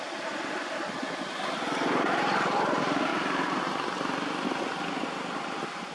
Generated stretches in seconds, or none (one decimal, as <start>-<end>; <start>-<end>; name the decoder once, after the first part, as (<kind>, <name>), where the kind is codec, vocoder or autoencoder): 3.1-3.6 (vocoder, BigVGAN v2)